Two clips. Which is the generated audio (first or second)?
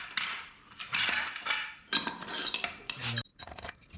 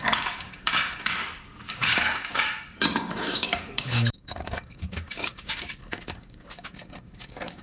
second